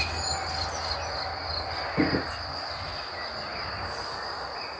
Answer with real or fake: real